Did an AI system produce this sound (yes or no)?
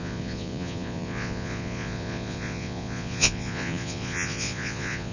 yes